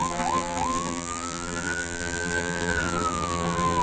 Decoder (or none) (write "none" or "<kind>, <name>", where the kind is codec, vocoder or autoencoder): vocoder, BigVGAN v2